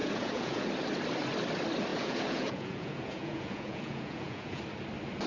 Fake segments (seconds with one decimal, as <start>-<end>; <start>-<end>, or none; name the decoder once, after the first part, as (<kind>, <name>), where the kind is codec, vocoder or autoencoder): 0.0-0.7 (vocoder, Vocos); 1.9-4.6